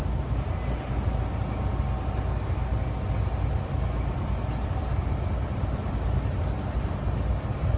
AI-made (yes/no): no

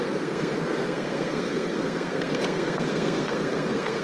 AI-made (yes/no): yes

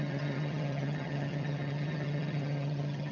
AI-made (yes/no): yes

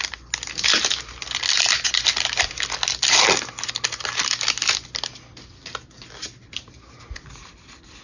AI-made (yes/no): no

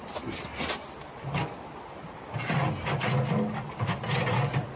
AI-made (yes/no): no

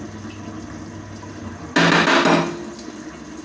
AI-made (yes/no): no